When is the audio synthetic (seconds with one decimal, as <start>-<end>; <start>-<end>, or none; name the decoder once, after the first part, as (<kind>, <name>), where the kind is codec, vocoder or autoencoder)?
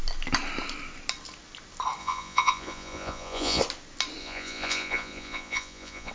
2.0-3.6 (vocoder, Vocos); 4.2-6.1